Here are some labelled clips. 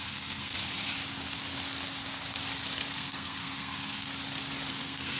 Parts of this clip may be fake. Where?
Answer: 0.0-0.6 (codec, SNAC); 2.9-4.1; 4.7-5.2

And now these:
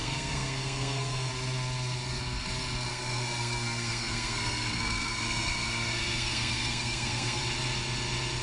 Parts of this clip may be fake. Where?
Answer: 0.0-1.3 (codec, SNAC); 2.9-7.4